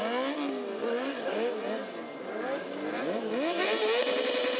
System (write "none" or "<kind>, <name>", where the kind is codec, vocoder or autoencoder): none